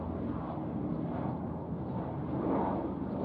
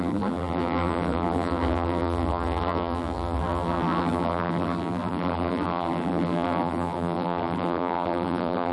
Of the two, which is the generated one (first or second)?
second